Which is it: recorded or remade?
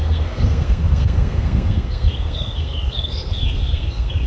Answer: remade